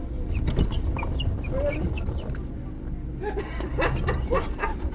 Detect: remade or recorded recorded